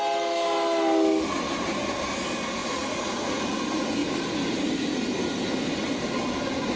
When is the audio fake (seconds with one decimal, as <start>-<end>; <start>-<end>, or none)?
2.6-3.4